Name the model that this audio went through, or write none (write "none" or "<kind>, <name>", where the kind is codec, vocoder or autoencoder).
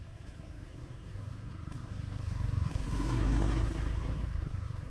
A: codec, SNAC